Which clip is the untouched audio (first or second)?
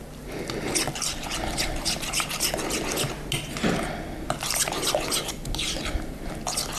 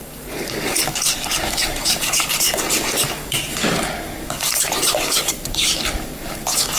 first